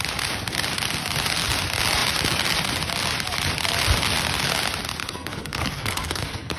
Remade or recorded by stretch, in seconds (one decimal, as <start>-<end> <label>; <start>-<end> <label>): 0.0-5.0 recorded; 5.0-6.6 remade